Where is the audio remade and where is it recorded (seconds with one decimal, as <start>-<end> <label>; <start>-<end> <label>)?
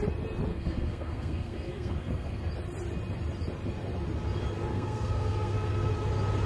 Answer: 0.0-0.5 recorded; 0.5-2.5 remade; 2.5-4.7 recorded; 4.7-5.9 remade; 5.9-6.5 recorded